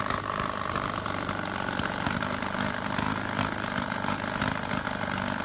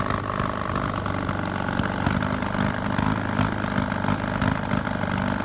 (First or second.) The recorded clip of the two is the second